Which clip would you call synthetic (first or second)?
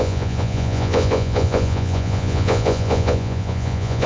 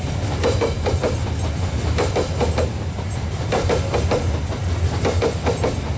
first